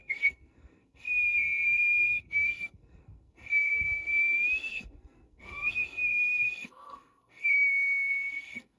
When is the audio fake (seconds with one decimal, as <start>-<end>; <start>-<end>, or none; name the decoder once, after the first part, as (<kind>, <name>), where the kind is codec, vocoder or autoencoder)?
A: 0.0-4.1 (codec, SNAC); 4.7-8.8

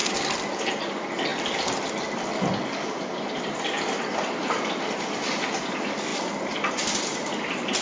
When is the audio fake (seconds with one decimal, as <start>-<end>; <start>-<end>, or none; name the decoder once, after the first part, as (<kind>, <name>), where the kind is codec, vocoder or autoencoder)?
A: none

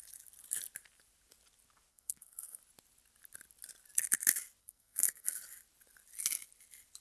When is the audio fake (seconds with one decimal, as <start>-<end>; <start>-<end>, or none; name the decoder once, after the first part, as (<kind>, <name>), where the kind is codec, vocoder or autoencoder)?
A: 1.9-2.6 (codec, SNAC); 4.6-5.4

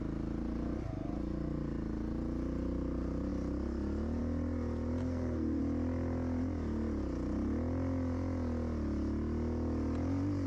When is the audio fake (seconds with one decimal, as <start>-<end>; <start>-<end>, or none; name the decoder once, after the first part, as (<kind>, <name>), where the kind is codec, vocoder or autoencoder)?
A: 5.0-5.6 (codec, SNAC)

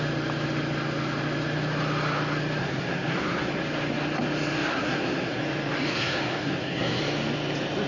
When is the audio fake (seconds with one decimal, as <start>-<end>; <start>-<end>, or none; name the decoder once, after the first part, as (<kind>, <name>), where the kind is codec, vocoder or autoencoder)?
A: 2.6-3.5 (codec, SNAC); 4.7-5.4; 5.9-7.0

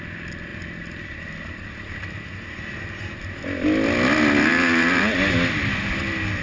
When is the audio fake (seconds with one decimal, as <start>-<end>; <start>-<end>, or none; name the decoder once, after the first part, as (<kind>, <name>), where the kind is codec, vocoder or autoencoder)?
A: none

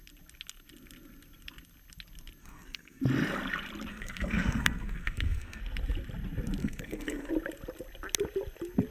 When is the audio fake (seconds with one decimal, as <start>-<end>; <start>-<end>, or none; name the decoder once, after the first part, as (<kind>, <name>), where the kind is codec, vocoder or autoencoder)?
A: 2.4-3.0 (codec, SNAC); 3.9-5.6; 6.6-7.3